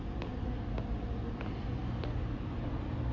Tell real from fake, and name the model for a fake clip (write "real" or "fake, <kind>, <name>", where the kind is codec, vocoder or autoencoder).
real